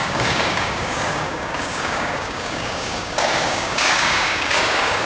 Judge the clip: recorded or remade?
remade